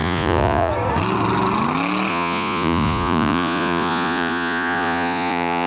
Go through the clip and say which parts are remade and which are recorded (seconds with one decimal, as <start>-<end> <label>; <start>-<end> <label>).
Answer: 0.0-0.7 remade; 0.7-2.1 recorded; 2.1-5.7 remade